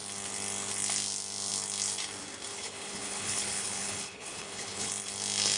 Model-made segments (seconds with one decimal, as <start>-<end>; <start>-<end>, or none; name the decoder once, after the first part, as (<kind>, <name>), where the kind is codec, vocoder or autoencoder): 2.5-4.9 (codec, HILCodec)